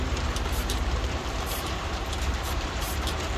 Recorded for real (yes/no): no